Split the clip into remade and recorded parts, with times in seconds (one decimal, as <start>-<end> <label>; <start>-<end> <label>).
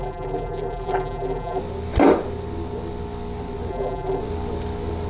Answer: 0.0-1.6 remade; 1.6-3.7 recorded; 3.7-4.2 remade; 4.2-5.1 recorded